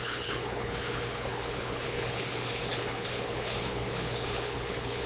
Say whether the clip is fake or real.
fake